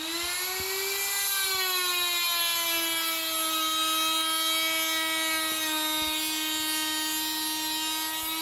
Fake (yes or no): no